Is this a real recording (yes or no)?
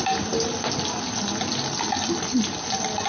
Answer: yes